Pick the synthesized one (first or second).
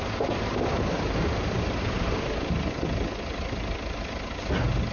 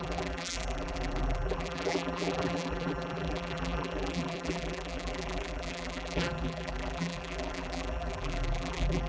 second